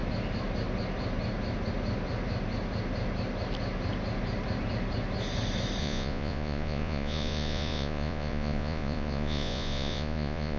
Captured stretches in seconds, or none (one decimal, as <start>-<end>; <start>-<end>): 0.0-5.8

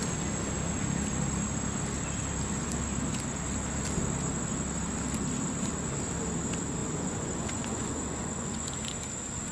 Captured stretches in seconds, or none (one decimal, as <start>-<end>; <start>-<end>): 0.0-6.8; 8.7-9.5

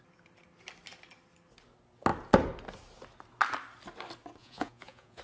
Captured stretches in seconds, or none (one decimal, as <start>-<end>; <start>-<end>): 0.0-4.4